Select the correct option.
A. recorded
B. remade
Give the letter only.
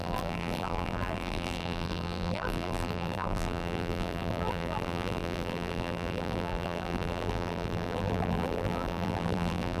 B